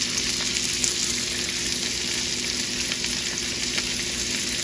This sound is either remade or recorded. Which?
recorded